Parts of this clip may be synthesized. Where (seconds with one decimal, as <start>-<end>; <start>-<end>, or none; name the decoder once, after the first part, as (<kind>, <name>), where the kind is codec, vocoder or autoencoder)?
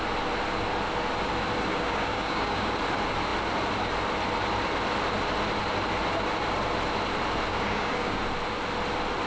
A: 1.7-2.7 (codec, DAC); 7.5-8.2